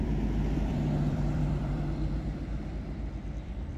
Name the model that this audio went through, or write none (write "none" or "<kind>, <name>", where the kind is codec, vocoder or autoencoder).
vocoder, BigVGAN v2